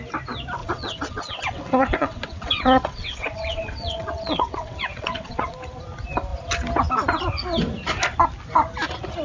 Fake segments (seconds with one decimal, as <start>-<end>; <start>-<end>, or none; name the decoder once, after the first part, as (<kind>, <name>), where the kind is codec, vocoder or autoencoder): 0.6-5.5 (vocoder, WaveNeXt)